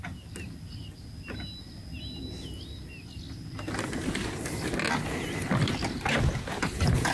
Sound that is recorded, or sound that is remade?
recorded